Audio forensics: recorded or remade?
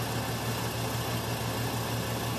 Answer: recorded